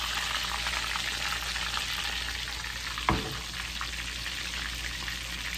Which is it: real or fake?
real